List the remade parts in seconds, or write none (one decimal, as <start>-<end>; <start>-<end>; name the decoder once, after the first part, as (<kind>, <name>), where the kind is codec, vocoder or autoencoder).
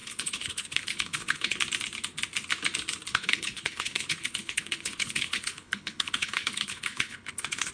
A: 0.0-1.6 (codec, HILCodec); 3.1-7.7